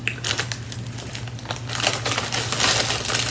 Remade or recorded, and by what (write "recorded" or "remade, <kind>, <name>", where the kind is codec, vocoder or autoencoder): recorded